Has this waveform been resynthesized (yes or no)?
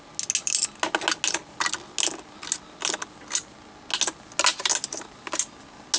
no